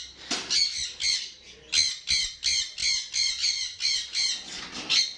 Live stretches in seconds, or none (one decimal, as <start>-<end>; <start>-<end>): 0.0-5.2